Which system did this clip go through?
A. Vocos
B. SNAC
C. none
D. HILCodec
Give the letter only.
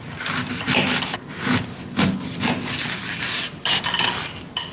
C